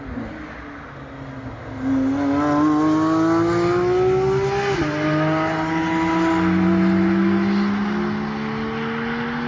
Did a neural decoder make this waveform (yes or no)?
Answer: no